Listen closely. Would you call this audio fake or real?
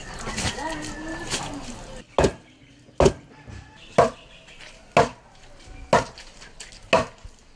real